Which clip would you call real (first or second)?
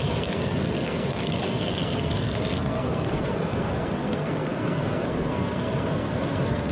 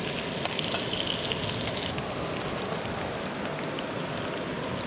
second